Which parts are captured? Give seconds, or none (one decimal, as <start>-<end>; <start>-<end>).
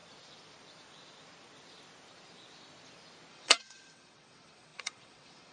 0.0-3.3